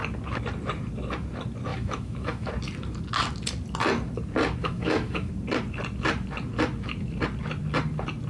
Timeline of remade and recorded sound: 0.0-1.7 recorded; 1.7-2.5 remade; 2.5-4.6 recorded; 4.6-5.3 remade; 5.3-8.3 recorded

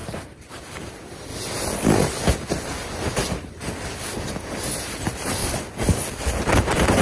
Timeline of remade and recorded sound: 0.0-0.9 remade; 0.9-3.2 recorded; 3.2-3.9 remade; 3.9-7.0 recorded

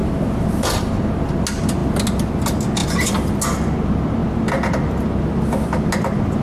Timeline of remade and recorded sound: 0.0-6.4 recorded